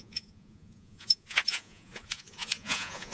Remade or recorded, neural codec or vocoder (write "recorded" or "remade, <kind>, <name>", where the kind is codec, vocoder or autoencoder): remade, vocoder, Vocos